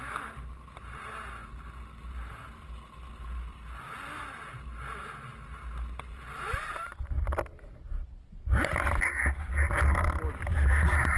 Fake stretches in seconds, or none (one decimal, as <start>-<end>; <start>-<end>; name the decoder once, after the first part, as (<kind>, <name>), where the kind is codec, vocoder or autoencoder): none